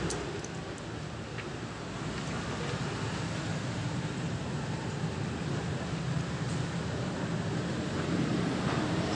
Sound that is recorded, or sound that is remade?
recorded